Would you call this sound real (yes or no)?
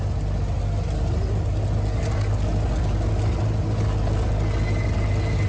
yes